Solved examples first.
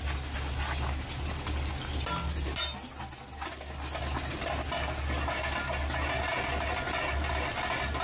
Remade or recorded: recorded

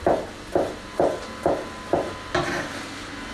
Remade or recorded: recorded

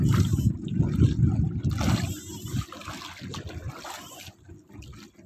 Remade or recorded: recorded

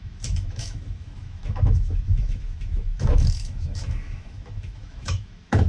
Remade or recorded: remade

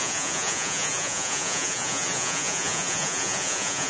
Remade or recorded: remade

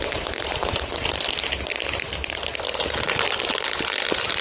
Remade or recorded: recorded